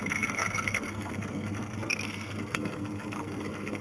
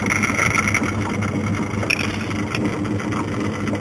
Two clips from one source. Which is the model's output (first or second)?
first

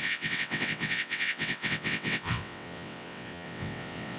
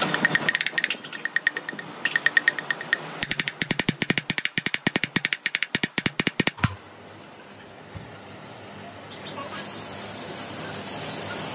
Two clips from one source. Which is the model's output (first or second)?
first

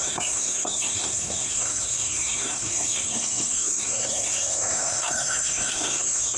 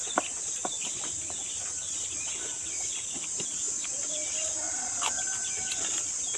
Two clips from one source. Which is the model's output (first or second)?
first